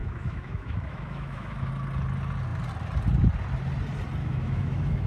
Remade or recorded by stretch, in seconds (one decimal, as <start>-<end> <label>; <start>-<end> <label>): 0.0-1.7 remade; 1.7-4.2 recorded; 4.2-5.1 remade